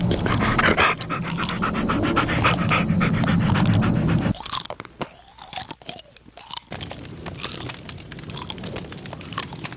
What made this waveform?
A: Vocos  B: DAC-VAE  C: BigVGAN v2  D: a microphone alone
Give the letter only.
D